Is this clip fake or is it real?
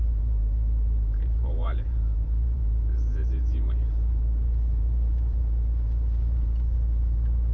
fake